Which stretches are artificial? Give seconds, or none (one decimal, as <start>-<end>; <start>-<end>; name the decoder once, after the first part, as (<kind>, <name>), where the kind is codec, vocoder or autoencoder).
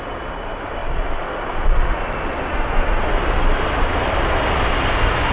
2.5-3.1 (autoencoder, DAC-VAE)